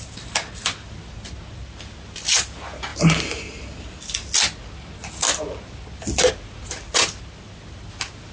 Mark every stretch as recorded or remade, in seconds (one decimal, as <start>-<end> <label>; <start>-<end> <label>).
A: 0.0-8.3 recorded